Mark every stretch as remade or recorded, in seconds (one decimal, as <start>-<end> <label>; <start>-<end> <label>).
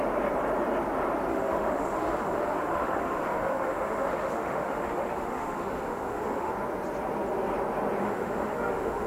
0.0-1.3 recorded; 1.3-6.5 remade; 6.5-8.0 recorded; 8.0-9.1 remade